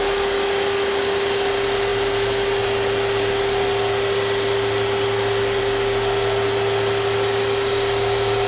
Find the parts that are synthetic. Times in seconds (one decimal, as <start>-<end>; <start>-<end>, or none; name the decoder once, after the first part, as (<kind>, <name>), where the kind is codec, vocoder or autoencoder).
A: none

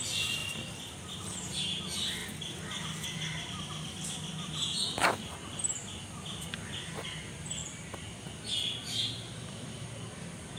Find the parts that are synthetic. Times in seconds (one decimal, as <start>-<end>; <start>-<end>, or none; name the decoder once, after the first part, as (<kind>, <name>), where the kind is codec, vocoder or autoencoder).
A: none

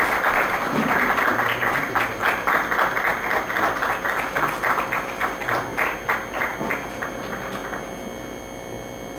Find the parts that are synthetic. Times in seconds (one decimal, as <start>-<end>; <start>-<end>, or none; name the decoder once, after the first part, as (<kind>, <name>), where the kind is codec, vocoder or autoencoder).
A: none

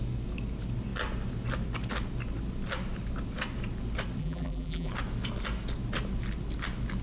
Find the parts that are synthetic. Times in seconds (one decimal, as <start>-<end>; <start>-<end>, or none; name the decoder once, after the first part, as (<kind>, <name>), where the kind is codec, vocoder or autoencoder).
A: 4.2-4.9 (vocoder, BigVGAN v2)

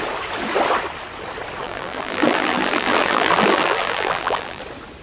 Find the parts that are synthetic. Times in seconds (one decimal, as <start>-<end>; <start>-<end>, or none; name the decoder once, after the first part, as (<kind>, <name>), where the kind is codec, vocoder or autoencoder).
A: 1.6-4.6 (vocoder, BigVGAN v2)